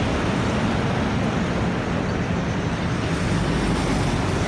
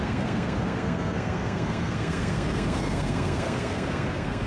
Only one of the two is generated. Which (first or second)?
second